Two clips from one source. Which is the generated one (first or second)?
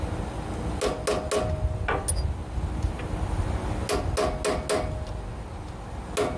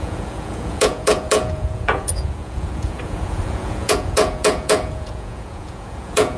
second